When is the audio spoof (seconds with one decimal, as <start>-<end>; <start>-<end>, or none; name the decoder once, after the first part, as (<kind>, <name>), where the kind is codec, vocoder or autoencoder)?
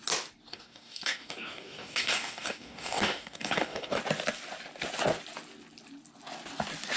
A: 0.5-4.0 (codec, DAC)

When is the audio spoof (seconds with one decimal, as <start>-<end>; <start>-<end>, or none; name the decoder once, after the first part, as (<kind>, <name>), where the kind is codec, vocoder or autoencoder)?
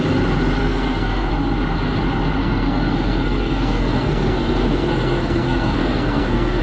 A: 0.6-1.3 (codec, SNAC); 2.4-6.6